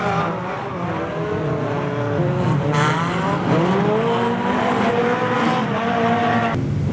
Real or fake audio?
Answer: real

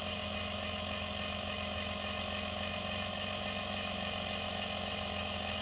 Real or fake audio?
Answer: fake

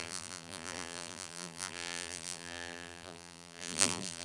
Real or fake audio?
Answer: fake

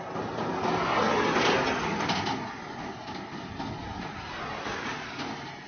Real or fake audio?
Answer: real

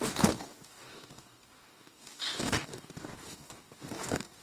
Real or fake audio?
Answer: fake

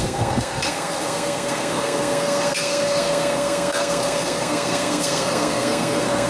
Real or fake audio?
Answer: fake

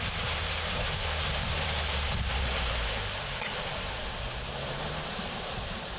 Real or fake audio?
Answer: fake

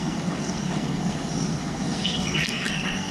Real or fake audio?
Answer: fake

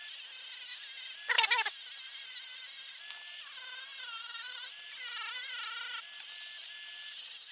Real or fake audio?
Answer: real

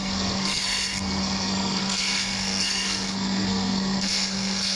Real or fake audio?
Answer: fake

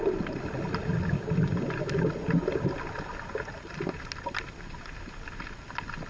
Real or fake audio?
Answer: real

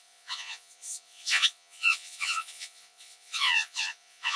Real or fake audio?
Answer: fake